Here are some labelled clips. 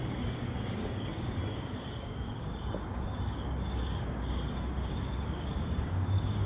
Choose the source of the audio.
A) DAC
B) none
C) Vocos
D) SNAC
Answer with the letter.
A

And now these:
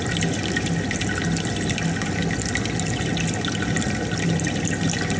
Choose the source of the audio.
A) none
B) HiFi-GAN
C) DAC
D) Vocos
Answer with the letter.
A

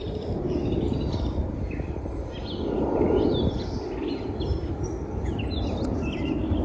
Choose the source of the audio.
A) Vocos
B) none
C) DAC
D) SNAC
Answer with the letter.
B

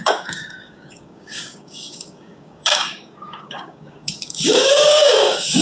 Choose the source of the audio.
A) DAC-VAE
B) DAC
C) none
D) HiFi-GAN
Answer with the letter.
B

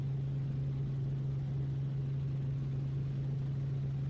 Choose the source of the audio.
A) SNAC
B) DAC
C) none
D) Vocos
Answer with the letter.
C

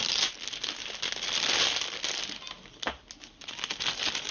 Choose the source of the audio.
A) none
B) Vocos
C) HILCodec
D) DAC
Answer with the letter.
A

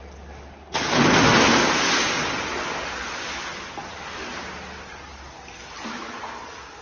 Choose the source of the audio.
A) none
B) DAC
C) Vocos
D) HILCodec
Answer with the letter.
A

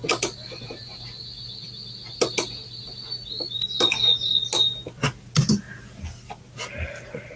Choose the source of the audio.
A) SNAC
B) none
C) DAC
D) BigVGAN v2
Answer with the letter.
B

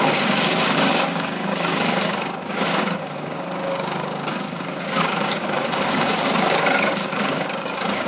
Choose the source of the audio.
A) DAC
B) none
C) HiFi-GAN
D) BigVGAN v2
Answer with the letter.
A